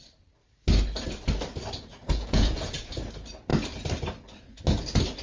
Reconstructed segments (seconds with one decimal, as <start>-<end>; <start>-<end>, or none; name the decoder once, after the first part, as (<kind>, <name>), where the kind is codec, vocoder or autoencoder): 1.9-3.0 (vocoder, Vocos)